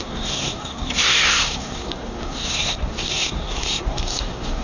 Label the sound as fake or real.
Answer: fake